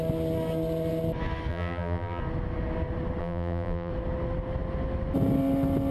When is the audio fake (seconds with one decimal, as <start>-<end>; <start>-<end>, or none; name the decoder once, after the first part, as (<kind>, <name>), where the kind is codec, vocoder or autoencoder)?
1.5-2.2 (vocoder, BigVGAN v2); 3.2-3.9